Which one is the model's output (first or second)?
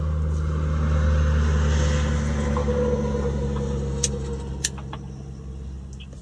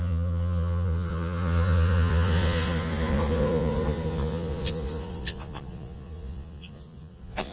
second